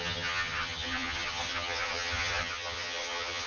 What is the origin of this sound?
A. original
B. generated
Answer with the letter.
B